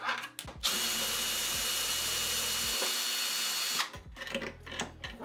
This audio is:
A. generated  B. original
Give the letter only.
B